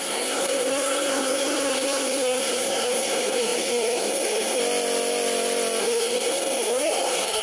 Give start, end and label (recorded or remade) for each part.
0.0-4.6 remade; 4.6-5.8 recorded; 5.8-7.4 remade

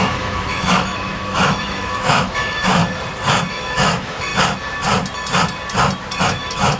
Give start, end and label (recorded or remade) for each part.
0.0-2.8 remade; 2.8-3.5 recorded; 3.5-4.3 remade; 4.3-6.2 recorded; 6.2-6.8 remade

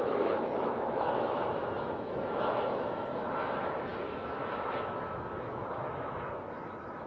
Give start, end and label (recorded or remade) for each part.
0.0-7.1 remade

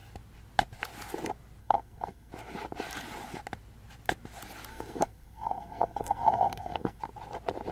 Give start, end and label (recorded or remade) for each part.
0.0-1.6 recorded; 1.6-2.3 remade; 2.3-4.7 recorded; 4.7-7.0 remade; 7.0-7.7 recorded

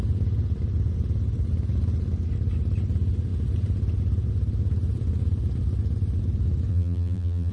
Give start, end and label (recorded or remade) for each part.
0.0-6.7 recorded; 6.7-7.5 remade